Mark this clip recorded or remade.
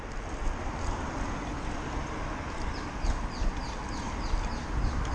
recorded